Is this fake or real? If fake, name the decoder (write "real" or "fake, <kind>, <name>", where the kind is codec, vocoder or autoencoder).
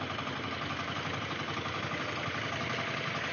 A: real